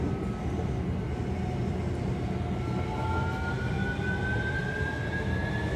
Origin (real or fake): real